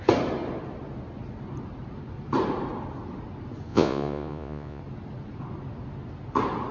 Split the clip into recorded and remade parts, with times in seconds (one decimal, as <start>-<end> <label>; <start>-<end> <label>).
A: 0.0-3.7 recorded; 3.7-4.8 remade; 4.8-6.7 recorded